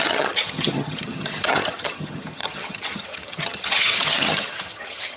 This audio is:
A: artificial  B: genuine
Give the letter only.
A